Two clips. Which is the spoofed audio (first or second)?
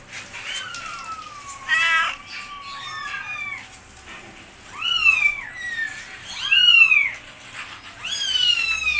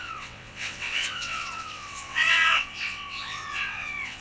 second